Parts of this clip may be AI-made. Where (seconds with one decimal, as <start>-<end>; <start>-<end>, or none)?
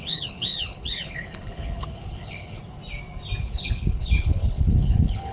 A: 0.0-2.6; 3.4-5.3